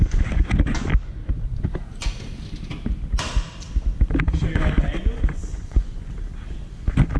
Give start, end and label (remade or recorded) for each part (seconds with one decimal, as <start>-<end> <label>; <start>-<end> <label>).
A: 0.0-5.5 recorded; 5.5-6.1 remade; 6.1-7.2 recorded